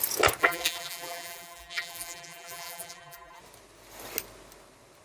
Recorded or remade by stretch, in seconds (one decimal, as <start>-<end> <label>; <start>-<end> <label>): 0.0-0.4 recorded; 0.4-3.4 remade; 3.4-5.0 recorded